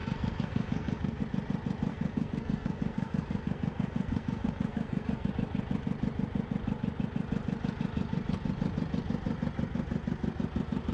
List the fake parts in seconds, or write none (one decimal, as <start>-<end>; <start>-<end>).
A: 0.0-1.2; 1.9-5.3